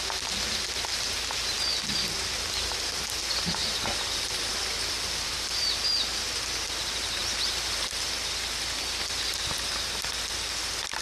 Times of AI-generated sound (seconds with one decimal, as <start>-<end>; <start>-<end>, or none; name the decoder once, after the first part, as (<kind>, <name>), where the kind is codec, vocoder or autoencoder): 3.6-5.9 (vocoder, BigVGAN v2)